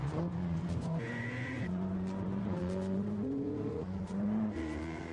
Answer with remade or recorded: remade